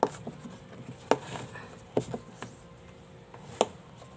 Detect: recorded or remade recorded